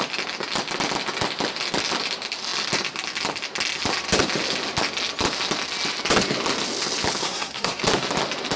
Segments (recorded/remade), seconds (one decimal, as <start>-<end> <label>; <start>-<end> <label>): 0.0-7.2 recorded; 7.2-7.8 remade; 7.8-8.6 recorded